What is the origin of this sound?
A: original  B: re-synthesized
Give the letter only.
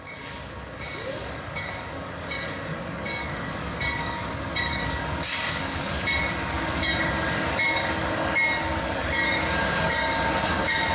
B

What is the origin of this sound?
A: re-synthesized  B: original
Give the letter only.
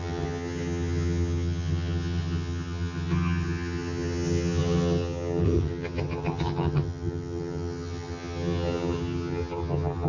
A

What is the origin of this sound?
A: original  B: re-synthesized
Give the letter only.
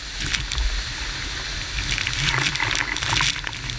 A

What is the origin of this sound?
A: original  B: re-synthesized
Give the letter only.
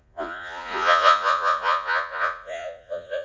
B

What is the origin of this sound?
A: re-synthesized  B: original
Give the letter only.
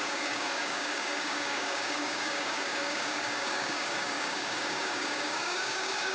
A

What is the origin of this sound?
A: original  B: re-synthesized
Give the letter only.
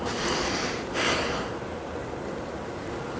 A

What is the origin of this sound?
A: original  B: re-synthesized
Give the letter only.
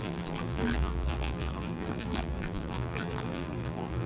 B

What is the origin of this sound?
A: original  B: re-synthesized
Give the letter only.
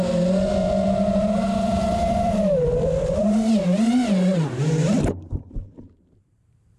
B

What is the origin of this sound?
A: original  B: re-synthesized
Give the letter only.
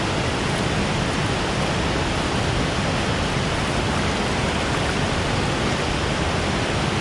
A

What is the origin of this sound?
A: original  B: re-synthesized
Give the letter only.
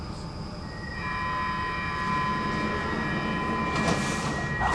A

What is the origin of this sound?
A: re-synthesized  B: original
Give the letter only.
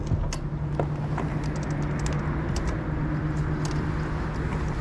B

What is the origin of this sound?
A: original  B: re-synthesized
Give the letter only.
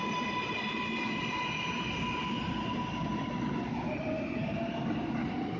A